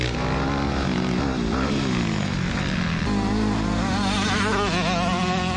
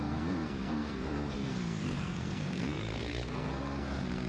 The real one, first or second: first